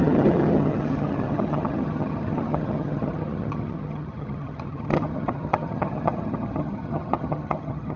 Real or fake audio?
fake